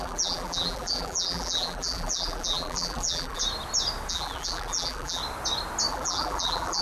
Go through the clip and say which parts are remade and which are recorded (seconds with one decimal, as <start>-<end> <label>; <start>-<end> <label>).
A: 0.0-3.4 remade; 3.4-4.1 recorded; 4.1-5.2 remade; 5.2-5.9 recorded; 5.9-6.8 remade